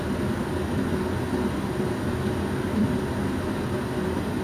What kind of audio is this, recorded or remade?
recorded